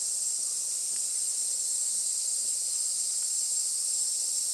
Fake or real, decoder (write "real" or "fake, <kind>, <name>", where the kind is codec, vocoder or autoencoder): fake, vocoder, BigVGAN v2